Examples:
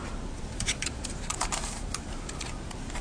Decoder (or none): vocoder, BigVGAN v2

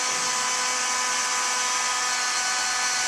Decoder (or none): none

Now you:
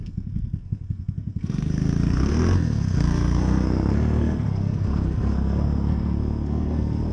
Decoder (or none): codec, SNAC